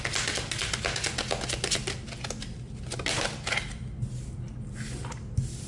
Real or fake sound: real